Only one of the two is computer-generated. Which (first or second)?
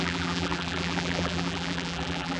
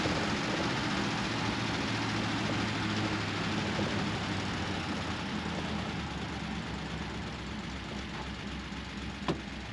first